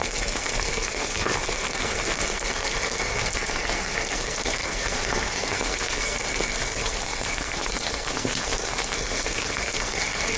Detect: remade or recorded remade